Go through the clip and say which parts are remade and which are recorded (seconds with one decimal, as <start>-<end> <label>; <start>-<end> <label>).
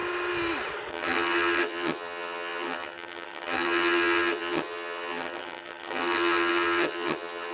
0.0-0.9 recorded; 0.9-7.5 remade